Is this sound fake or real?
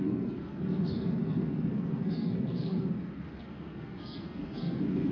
fake